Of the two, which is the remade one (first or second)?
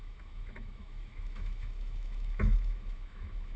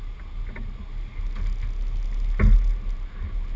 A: first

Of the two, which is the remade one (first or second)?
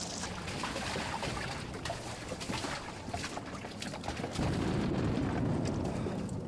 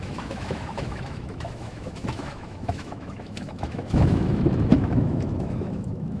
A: second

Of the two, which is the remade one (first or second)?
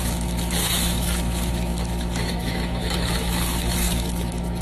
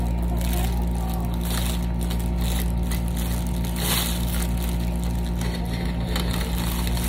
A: first